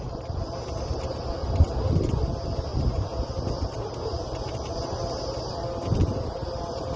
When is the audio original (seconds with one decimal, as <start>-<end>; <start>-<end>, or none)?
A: 0.0-1.4; 2.2-2.7; 3.9-6.0; 6.6-7.0